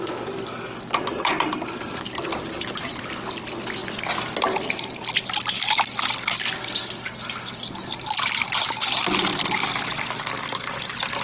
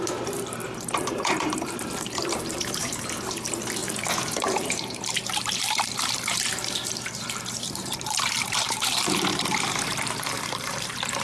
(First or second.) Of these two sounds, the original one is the first